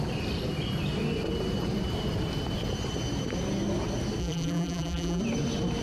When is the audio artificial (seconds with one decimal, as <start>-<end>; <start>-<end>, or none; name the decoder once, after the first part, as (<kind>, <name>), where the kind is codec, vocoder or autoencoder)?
4.2-5.2 (vocoder, BigVGAN v2)